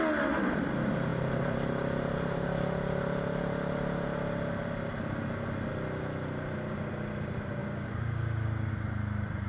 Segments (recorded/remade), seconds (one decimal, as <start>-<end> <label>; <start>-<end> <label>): 0.0-7.6 recorded; 7.6-8.7 remade; 8.7-9.5 recorded